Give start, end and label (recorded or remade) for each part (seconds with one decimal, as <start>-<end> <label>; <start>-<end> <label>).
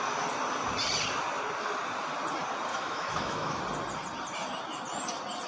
0.0-2.7 recorded; 2.7-3.6 remade; 3.6-5.5 recorded